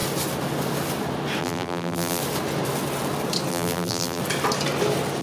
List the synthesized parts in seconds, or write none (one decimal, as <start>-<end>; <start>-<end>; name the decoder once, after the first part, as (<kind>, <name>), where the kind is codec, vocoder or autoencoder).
1.4-2.2 (vocoder, BigVGAN v2); 3.5-4.2